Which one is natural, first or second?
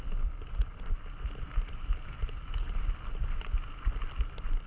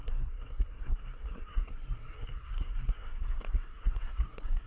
first